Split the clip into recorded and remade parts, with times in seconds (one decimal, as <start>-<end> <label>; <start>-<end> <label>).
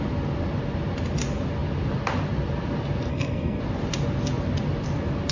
0.0-3.1 recorded; 3.1-3.6 remade; 3.6-5.3 recorded